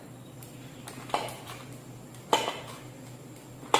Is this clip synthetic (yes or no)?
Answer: no